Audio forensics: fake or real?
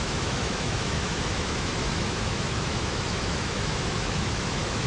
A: fake